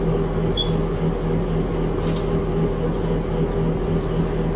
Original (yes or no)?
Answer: yes